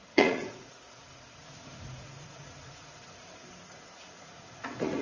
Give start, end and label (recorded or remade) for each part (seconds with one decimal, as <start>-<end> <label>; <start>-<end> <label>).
0.0-5.0 remade